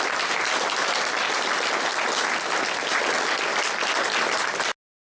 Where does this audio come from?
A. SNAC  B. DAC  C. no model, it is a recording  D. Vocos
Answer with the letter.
C